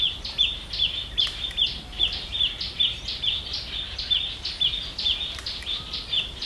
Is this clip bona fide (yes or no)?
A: yes